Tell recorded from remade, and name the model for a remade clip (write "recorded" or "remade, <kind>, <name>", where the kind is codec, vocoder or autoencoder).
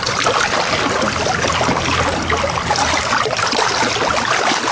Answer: recorded